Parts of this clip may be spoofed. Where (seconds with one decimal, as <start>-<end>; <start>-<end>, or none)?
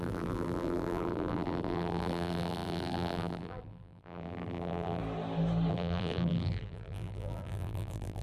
0.0-5.0; 5.7-8.2